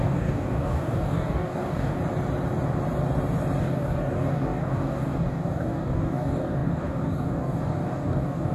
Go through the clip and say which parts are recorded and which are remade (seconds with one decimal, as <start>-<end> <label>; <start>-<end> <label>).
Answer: 0.0-2.0 remade; 2.0-3.6 recorded; 3.6-8.5 remade